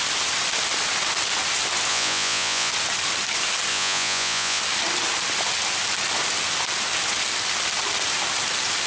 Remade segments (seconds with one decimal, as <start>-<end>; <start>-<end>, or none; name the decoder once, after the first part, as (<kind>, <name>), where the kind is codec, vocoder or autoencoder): 1.9-2.7 (vocoder, Vocos); 3.7-4.6